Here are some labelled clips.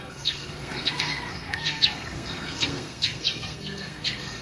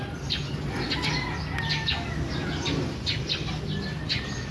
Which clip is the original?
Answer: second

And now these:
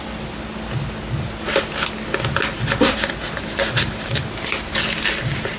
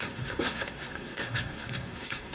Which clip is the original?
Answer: first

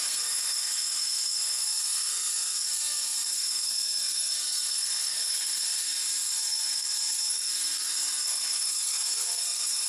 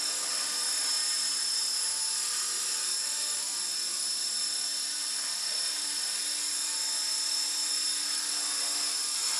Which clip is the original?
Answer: second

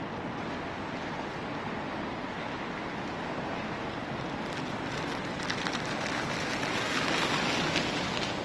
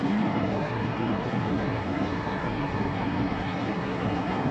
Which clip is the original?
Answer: first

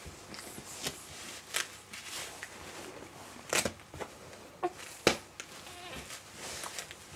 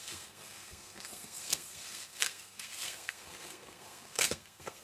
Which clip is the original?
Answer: first